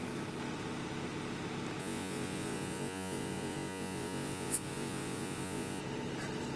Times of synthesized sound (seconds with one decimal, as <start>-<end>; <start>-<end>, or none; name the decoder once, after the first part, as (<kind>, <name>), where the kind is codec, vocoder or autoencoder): 1.8-5.8 (vocoder, Vocos)

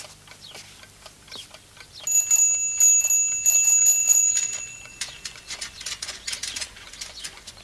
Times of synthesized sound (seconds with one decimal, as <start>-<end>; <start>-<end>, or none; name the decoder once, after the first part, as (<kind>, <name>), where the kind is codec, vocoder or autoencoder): 4.0-7.6 (vocoder, Vocos)

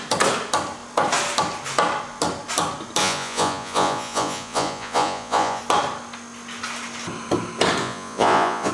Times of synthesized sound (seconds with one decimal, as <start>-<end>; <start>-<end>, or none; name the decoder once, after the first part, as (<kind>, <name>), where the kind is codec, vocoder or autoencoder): 3.0-5.6 (vocoder, Vocos); 7.8-8.7

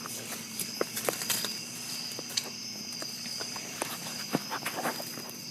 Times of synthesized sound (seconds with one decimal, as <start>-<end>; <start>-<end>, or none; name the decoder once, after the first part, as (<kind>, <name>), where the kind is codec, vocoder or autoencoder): none

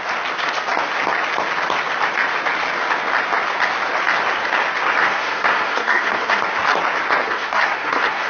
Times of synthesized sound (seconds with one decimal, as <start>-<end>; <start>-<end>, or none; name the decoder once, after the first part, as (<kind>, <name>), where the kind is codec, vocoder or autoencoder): 5.0-6.4 (codec, SNAC); 7.2-8.3

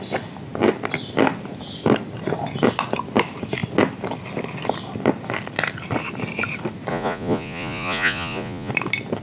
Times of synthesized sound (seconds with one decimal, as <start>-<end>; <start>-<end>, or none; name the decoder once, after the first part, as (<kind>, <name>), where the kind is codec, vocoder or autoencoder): 6.9-8.7 (vocoder, Vocos)

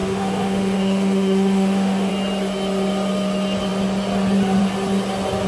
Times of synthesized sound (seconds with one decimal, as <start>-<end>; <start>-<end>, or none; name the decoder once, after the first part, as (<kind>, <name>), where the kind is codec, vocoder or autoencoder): 0.0-2.1 (autoencoder, DAC-VAE)